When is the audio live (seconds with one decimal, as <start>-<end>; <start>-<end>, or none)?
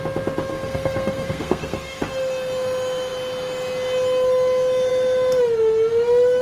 0.0-0.5; 2.0-6.4